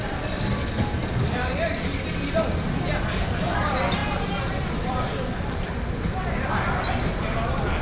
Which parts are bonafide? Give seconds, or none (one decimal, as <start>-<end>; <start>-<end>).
0.0-4.0; 6.5-7.8